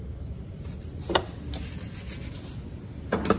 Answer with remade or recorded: recorded